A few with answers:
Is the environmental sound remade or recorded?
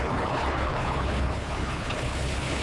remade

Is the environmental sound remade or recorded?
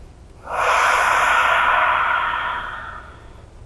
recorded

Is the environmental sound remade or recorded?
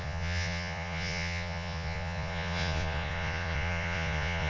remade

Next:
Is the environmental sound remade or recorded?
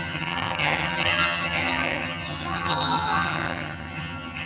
remade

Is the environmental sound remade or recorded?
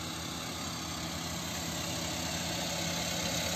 recorded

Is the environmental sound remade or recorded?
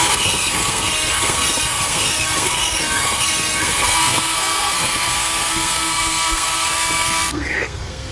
remade